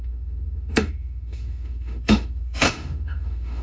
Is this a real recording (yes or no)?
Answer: no